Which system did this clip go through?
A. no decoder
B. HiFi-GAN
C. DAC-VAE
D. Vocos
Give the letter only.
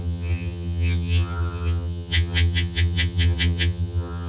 B